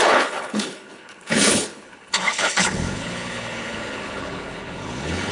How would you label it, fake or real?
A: fake